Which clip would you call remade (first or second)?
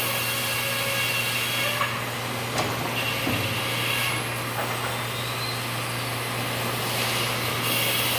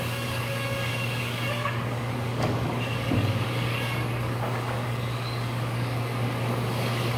second